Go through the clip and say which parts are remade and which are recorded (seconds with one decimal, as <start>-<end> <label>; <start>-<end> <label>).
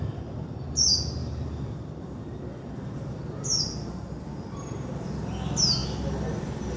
0.0-1.2 recorded; 1.2-4.9 remade; 4.9-5.8 recorded; 5.8-6.8 remade